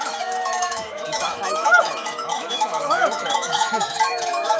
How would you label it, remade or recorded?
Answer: remade